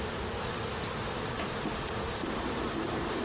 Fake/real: real